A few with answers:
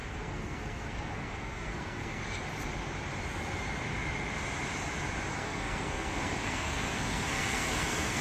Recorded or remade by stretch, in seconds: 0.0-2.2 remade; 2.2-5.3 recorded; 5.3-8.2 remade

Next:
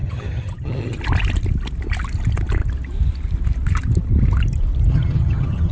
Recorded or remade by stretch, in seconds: 0.0-1.0 remade; 1.0-4.9 recorded; 4.9-5.7 remade

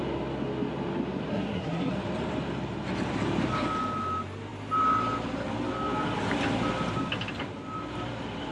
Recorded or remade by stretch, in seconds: 0.0-1.3 recorded; 1.3-1.9 remade; 1.9-8.5 recorded